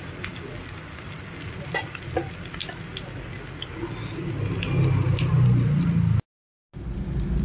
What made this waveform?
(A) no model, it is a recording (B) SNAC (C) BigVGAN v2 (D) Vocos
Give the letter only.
A